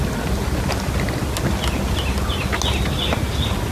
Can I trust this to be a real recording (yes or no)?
yes